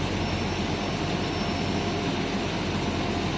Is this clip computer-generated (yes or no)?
no